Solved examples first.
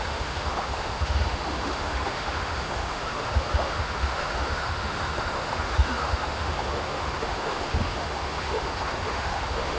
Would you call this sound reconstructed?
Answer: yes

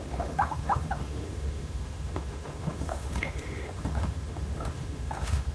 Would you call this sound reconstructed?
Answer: yes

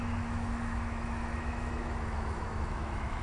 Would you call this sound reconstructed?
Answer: yes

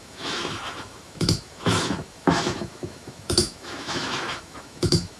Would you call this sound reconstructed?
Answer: yes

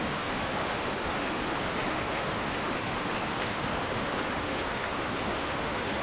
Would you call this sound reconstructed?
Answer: yes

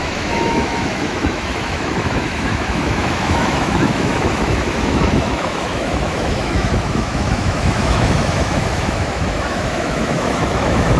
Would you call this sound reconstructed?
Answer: yes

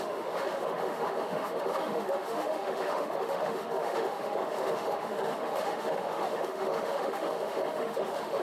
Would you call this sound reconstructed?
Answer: yes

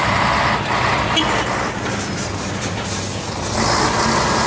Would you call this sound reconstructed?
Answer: no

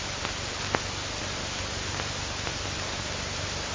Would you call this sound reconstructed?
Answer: no